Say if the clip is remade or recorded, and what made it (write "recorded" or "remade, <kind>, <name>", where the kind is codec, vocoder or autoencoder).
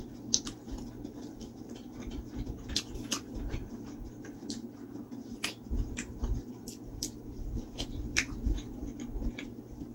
recorded